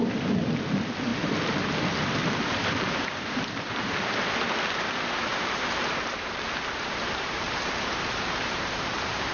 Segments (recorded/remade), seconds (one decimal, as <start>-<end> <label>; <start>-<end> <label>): 0.0-2.2 recorded; 2.2-4.3 remade; 4.3-5.3 recorded; 5.3-9.3 remade